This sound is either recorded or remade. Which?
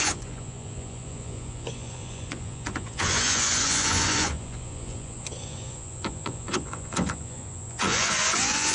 remade